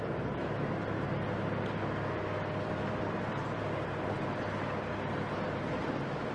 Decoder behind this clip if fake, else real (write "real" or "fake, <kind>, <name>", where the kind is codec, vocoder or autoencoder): real